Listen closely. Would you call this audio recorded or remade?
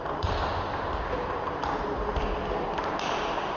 recorded